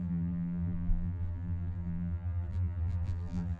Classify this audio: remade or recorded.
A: remade